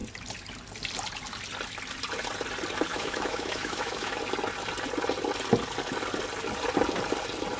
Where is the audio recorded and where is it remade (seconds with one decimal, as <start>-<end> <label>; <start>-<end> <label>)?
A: 0.0-2.9 recorded; 2.9-4.2 remade; 4.2-7.6 recorded